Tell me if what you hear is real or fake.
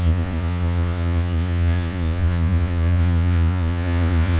fake